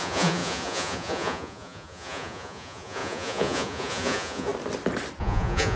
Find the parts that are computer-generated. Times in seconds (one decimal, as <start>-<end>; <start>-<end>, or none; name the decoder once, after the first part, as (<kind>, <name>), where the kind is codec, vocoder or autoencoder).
0.0-4.5 (vocoder, Vocos); 5.2-5.8